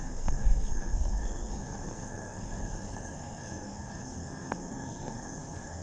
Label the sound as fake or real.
fake